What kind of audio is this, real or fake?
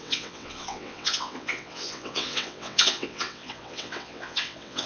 fake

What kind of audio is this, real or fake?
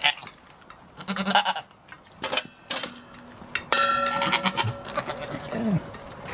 real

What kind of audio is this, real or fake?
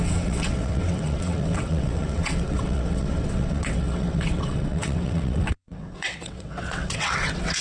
fake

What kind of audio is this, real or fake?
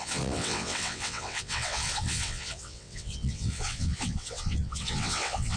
fake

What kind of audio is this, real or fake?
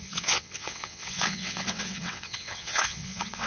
fake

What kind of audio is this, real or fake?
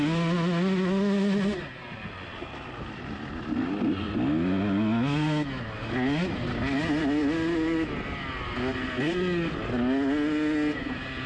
real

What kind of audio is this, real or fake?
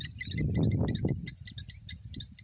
real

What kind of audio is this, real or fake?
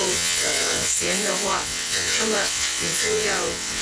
fake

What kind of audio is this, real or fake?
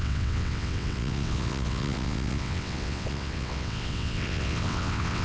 fake